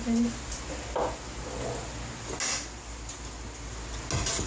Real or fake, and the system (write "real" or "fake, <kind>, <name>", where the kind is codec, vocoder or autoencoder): real